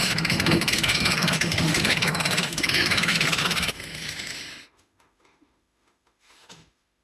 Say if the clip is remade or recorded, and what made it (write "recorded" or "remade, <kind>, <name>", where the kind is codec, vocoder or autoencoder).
remade, autoencoder, DAC-VAE